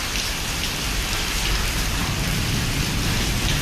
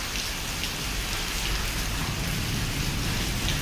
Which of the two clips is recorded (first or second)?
second